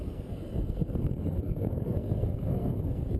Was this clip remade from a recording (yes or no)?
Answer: yes